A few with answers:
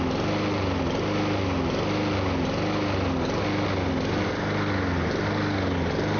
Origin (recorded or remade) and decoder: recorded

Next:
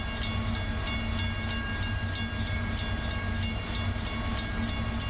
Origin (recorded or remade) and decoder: recorded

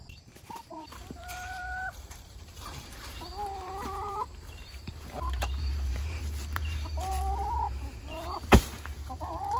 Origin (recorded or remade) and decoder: remade, vocoder, BigVGAN v2